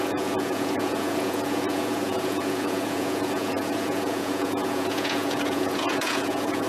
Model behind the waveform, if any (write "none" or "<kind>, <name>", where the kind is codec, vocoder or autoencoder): vocoder, Vocos